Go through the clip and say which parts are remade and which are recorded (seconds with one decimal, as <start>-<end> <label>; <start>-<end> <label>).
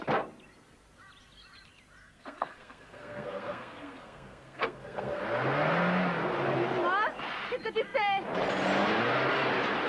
0.0-2.0 recorded; 2.0-5.2 remade; 5.2-9.9 recorded